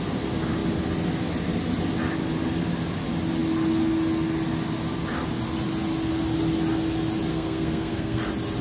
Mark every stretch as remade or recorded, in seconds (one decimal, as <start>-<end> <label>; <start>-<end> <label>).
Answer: 0.0-7.3 recorded; 7.3-8.2 remade; 8.2-8.6 recorded